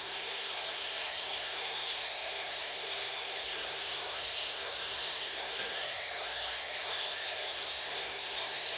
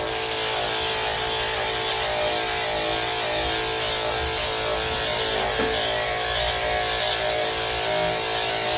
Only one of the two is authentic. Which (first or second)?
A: second